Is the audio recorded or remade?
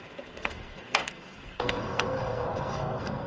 remade